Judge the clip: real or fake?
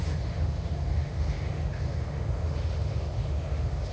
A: fake